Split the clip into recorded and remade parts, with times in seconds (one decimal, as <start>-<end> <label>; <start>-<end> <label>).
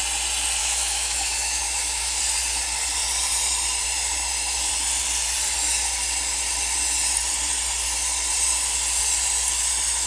0.0-0.6 recorded; 0.6-2.2 remade; 2.2-10.1 recorded